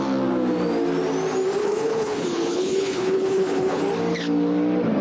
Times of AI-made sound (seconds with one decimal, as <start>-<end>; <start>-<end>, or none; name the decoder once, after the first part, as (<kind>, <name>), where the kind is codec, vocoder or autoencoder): 1.6-3.8 (codec, HILCodec)